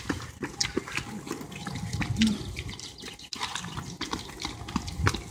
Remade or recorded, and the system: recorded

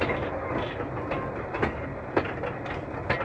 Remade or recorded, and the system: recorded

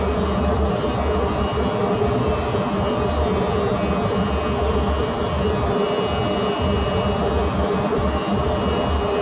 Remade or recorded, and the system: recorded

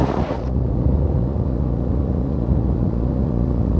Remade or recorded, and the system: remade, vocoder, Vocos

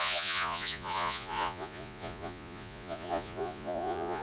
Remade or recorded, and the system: remade, vocoder, Vocos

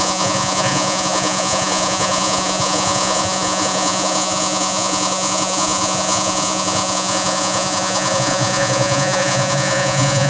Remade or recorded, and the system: remade, vocoder, Vocos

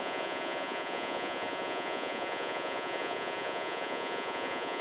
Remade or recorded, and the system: remade, vocoder, Vocos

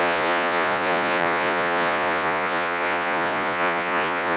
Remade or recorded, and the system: remade, vocoder, Vocos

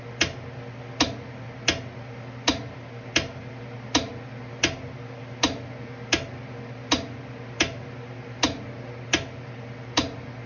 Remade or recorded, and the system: recorded